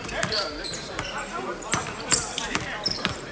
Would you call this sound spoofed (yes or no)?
yes